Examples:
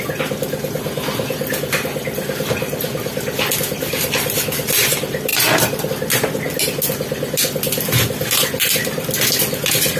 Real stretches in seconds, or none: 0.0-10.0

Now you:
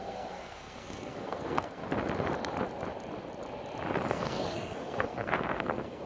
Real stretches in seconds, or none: 1.8-4.1

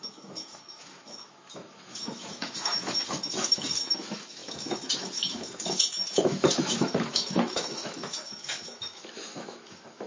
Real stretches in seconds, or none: none

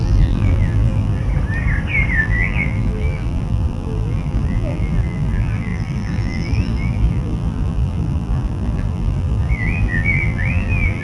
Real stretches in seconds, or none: 1.2-2.2

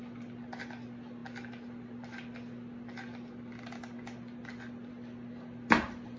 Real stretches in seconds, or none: 0.0-6.2

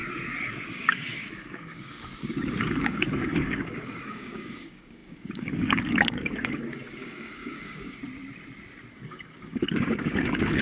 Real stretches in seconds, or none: 0.0-0.7; 8.0-8.9